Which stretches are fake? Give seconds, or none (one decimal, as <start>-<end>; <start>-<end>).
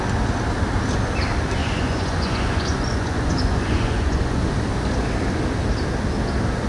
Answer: 1.6-4.4